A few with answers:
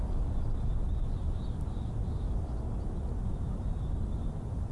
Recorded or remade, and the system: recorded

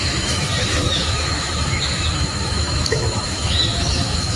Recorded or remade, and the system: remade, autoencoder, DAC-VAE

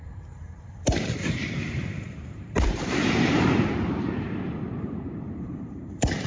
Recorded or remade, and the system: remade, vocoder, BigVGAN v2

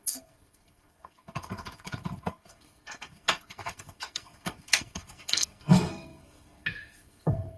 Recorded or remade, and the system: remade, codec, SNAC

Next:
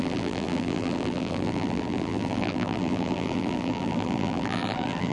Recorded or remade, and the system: remade, vocoder, BigVGAN v2